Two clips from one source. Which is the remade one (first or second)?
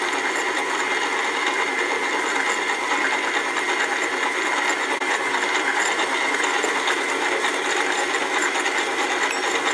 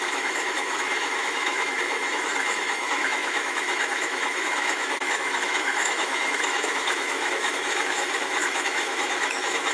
second